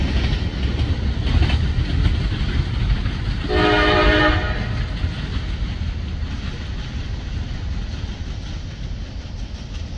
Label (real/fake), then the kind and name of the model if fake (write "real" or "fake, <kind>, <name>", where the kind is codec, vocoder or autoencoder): real